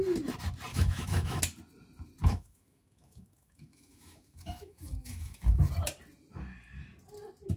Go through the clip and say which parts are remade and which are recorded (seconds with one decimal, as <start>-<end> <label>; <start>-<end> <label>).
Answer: 0.0-0.7 recorded; 0.7-1.4 remade; 1.4-2.2 recorded; 2.2-5.6 remade; 5.6-7.6 recorded